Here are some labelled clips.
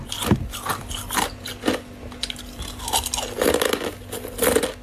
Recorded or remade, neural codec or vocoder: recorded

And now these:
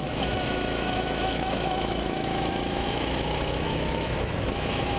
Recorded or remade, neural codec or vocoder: remade, autoencoder, DAC-VAE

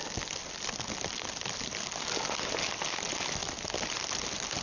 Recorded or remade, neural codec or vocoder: recorded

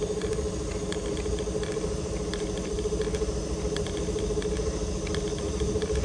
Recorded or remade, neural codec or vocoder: recorded